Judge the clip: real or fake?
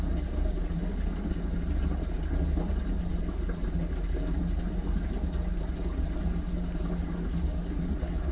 real